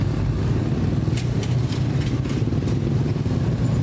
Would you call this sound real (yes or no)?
yes